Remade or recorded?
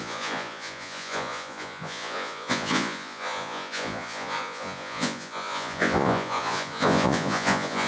remade